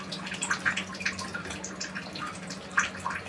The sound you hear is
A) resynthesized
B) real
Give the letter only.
B